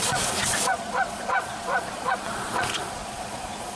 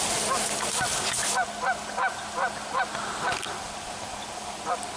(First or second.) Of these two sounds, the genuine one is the second